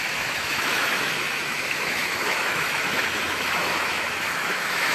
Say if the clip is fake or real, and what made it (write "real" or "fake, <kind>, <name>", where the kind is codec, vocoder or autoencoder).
fake, autoencoder, DAC-VAE